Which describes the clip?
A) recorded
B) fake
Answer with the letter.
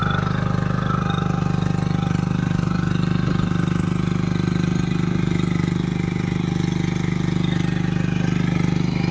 A